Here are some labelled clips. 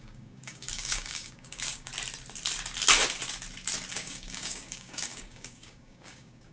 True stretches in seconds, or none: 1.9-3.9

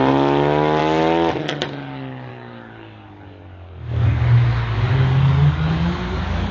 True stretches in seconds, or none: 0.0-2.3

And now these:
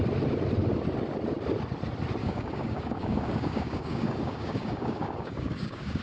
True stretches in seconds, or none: 0.0-2.2

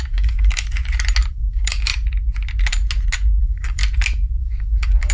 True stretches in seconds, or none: 0.8-1.3; 1.9-3.4; 3.8-4.4

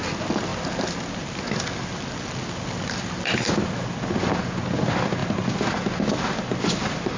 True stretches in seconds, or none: 0.0-7.2

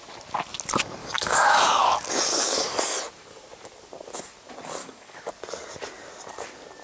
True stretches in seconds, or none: 0.0-1.0; 3.0-4.8; 5.3-6.8

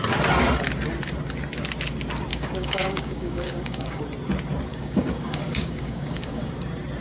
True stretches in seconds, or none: 0.0-2.3; 4.0-4.7; 6.5-7.0

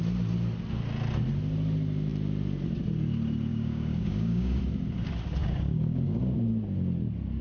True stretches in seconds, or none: 0.0-3.5; 4.6-5.4; 6.2-7.4